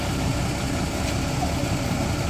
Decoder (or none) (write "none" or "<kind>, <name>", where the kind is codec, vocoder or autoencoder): none